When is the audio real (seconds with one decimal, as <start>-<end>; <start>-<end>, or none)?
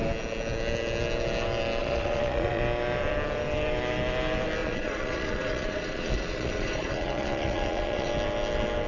0.0-1.8; 2.6-4.6; 8.1-8.9